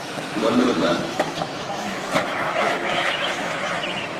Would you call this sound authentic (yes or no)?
no